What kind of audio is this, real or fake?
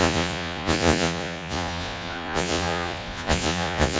fake